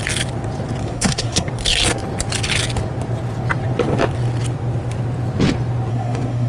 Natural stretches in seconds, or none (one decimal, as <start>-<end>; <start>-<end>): 0.0-0.8; 1.5-5.9